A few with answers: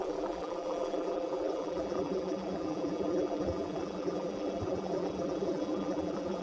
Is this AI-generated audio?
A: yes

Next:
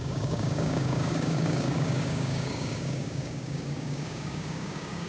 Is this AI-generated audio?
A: yes